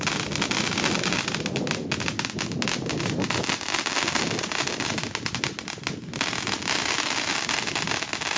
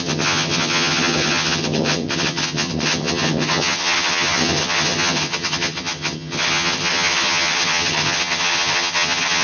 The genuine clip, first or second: first